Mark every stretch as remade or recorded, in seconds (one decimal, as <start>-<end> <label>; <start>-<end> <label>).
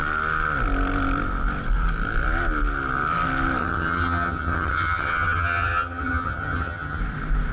0.0-3.6 recorded; 3.6-7.0 remade; 7.0-7.5 recorded